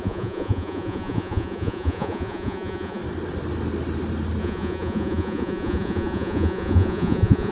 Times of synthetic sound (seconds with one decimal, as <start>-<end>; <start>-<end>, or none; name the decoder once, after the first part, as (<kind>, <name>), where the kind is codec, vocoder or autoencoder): 0.0-3.0 (vocoder, Vocos); 4.4-7.5